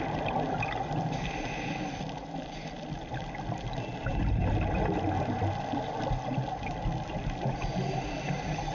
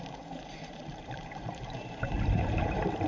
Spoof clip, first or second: second